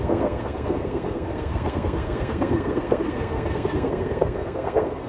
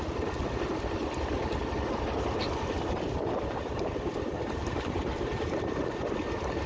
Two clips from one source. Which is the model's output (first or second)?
first